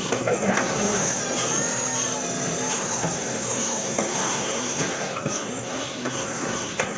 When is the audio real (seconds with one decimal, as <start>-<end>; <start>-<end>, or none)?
1.2-2.7